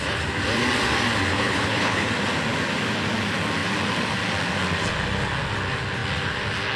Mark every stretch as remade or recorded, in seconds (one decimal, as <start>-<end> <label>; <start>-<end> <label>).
0.0-1.3 recorded; 1.3-2.1 remade; 2.1-6.8 recorded